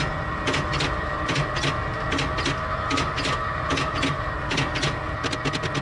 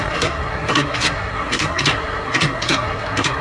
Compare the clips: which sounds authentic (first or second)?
first